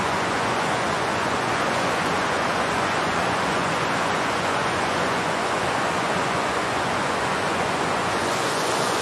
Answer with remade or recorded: remade